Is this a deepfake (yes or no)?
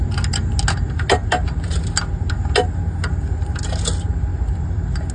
no